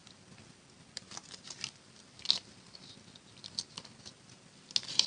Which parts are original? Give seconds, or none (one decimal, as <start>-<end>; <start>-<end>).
0.0-5.1